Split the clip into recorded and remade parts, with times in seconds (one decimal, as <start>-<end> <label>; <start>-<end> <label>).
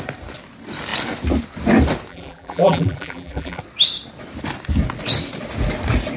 0.0-2.1 recorded; 2.1-3.6 remade; 3.6-6.2 recorded